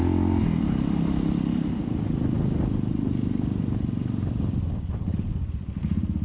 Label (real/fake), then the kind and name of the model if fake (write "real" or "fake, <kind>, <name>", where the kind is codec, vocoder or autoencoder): real